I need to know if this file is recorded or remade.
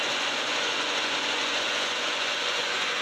remade